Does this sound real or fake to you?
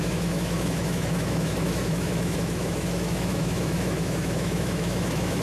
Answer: fake